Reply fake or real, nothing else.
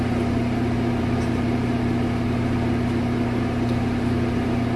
real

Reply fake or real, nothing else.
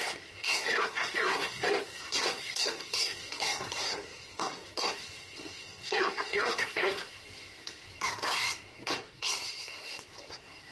fake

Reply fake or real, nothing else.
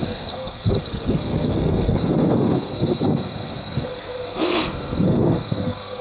fake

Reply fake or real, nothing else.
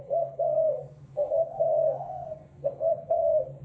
fake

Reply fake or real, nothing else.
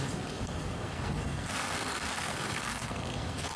fake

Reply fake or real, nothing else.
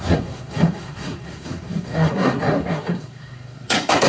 fake